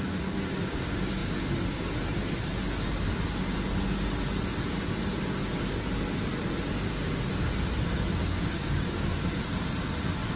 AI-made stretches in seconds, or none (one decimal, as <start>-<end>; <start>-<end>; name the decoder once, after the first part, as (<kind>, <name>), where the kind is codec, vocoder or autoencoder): 6.7-7.2 (codec, DAC); 8.2-9.1